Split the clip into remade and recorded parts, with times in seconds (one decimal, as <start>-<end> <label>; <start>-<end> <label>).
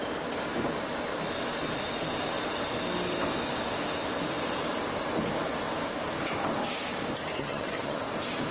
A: 0.0-7.4 recorded; 7.4-8.0 remade; 8.0-8.5 recorded